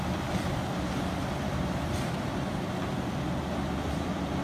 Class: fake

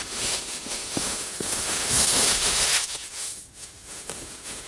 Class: fake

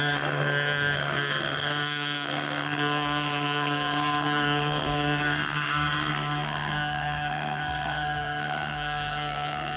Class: fake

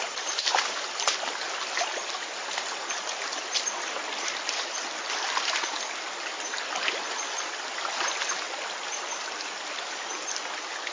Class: real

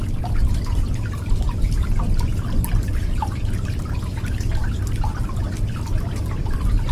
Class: real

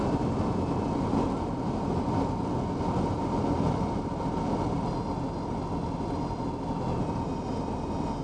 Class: real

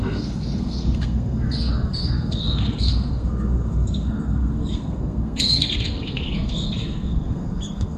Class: fake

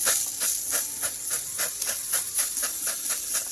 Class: real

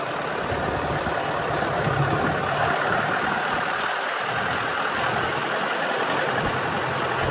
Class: fake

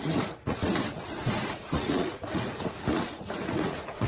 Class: fake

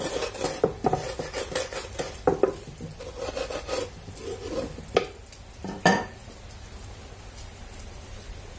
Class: real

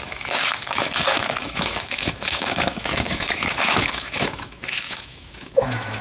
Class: fake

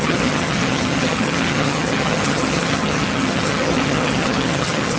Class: fake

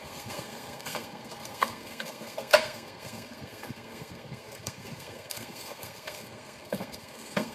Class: fake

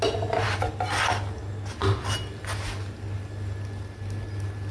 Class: real